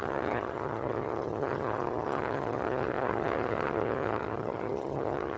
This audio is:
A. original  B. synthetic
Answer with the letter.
B